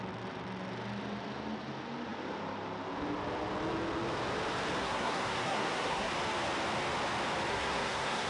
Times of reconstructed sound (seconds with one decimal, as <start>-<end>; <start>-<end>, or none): 4.8-6.1; 7.5-8.3